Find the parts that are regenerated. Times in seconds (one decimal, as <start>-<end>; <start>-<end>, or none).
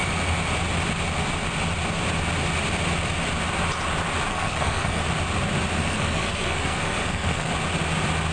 4.3-5.0; 5.8-7.5